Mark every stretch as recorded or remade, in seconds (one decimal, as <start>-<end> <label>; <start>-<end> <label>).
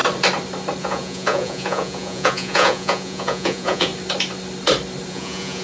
0.0-0.8 recorded; 0.8-3.9 remade; 3.9-5.1 recorded; 5.1-5.6 remade